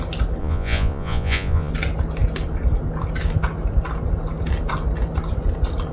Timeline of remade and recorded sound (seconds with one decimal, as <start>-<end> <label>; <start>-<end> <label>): 0.0-0.4 recorded; 0.4-1.7 remade; 1.7-5.9 recorded